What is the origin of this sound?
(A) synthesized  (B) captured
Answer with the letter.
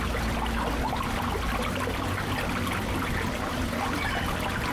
B